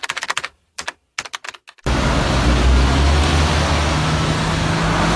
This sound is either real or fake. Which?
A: real